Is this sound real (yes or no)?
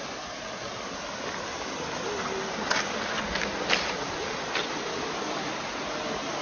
yes